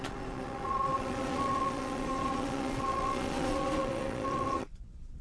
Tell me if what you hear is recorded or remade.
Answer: remade